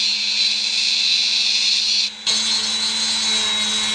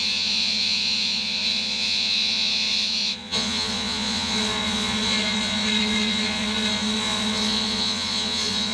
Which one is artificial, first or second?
second